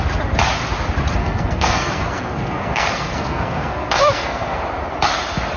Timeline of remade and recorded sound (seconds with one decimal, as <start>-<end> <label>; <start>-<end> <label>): 0.0-1.2 recorded; 1.2-4.6 remade; 4.6-5.6 recorded